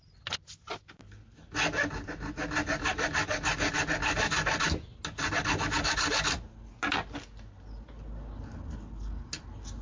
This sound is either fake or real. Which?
real